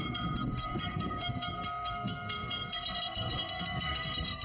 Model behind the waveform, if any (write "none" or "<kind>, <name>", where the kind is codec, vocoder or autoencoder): codec, SNAC